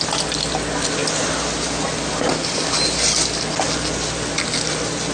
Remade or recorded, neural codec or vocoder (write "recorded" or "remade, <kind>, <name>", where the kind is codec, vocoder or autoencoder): recorded